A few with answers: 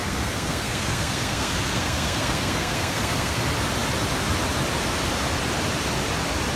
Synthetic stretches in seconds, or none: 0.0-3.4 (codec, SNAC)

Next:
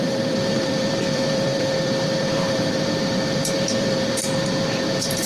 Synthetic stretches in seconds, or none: 0.0-5.3 (vocoder, BigVGAN v2)

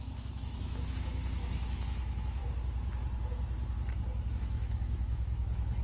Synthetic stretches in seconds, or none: 0.0-2.4 (autoencoder, DAC-VAE); 4.3-5.8

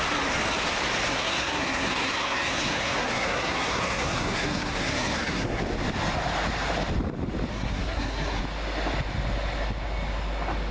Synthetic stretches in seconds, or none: 1.1-5.6 (codec, SNAC); 7.5-8.4

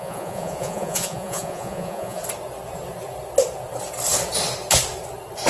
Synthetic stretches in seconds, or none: 0.0-2.2 (vocoder, Vocos)